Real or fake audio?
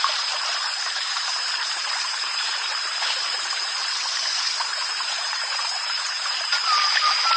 fake